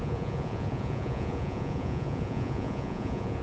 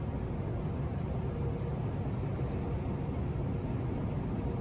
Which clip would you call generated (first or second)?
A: first